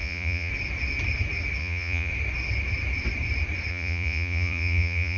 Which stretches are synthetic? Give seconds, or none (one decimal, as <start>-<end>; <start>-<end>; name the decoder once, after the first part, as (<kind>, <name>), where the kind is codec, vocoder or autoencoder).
0.0-0.5 (vocoder, Vocos); 1.6-2.1; 3.7-5.2